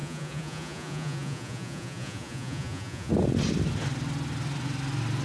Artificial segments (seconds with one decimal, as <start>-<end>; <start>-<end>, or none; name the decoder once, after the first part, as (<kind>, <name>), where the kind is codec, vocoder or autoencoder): 0.0-3.1 (vocoder, Vocos)